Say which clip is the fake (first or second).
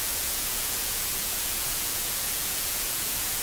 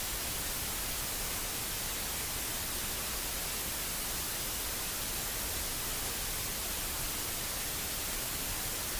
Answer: first